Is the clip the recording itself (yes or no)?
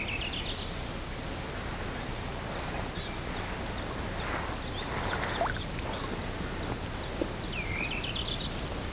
yes